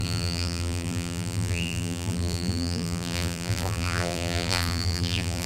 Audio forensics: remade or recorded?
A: remade